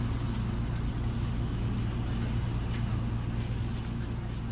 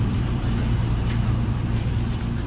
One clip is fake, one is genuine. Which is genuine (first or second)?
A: first